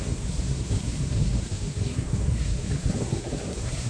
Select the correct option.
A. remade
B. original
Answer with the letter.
A